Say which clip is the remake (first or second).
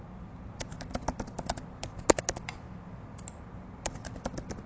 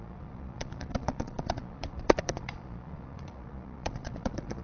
second